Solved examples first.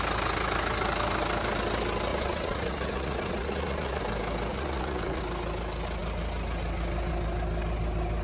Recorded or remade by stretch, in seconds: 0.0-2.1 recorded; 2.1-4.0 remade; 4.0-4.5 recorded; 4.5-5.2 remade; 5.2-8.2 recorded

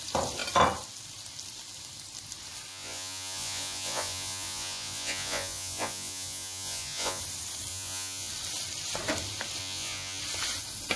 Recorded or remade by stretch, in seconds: 0.0-2.7 recorded; 2.7-7.2 remade; 7.2-7.7 recorded; 7.7-8.3 remade; 8.3-9.6 recorded; 9.6-10.2 remade; 10.2-11.0 recorded

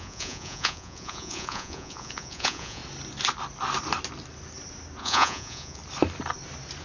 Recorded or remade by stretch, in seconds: 0.0-2.8 remade; 2.8-5.0 recorded; 5.0-5.8 remade; 5.8-6.8 recorded

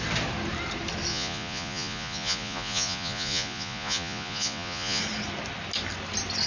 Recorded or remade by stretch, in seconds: 0.0-1.1 recorded; 1.1-5.0 remade; 5.0-6.5 recorded

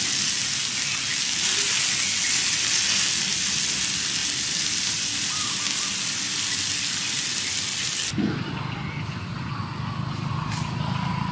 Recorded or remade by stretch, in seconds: 0.0-11.3 recorded

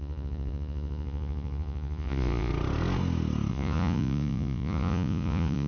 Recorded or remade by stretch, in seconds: 0.0-2.5 remade; 2.5-3.5 recorded; 3.5-5.7 remade

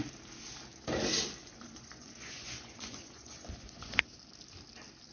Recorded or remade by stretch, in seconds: 0.0-1.4 recorded; 1.4-4.2 remade; 4.2-5.1 recorded